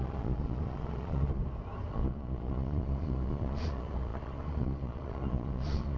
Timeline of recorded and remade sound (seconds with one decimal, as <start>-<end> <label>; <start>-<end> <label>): 0.0-1.4 remade; 1.4-1.9 recorded; 1.9-6.0 remade